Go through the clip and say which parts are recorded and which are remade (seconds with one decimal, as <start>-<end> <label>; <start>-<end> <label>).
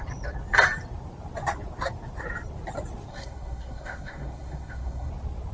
0.0-3.1 recorded; 3.1-5.1 remade; 5.1-5.5 recorded